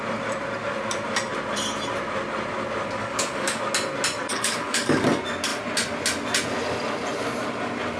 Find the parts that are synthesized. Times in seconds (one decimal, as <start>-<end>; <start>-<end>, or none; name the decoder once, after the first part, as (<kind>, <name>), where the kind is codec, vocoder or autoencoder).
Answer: 3.0-3.6 (codec, DAC); 4.3-5.1